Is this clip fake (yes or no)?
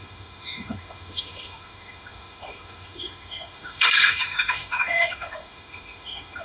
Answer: yes